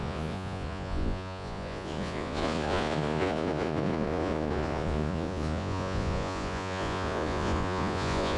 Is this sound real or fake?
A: fake